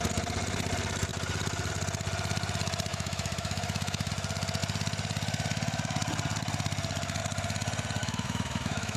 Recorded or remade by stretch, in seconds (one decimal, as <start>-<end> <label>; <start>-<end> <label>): 0.0-2.9 recorded; 2.9-4.1 remade; 4.1-8.0 recorded; 8.0-9.0 remade